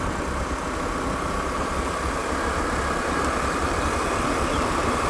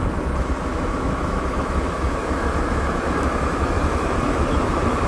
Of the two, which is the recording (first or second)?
first